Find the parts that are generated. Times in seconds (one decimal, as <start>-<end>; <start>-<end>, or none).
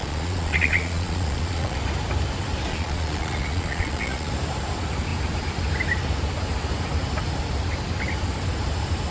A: 0.0-1.8; 2.7-4.3